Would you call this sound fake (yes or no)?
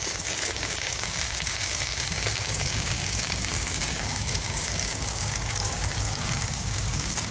yes